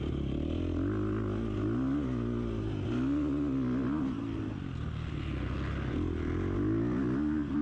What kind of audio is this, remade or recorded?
recorded